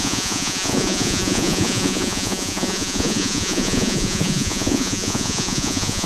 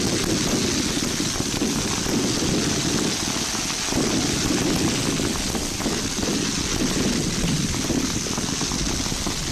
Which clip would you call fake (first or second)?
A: first